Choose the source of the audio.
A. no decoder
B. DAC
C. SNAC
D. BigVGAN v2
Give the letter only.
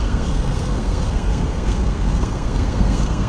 C